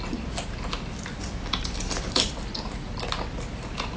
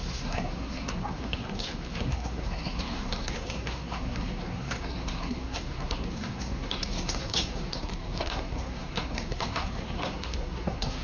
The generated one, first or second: second